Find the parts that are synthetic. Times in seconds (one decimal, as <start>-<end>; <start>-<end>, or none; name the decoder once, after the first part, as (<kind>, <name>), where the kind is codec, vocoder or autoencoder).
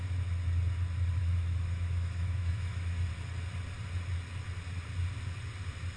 1.2-3.1 (autoencoder, DAC-VAE)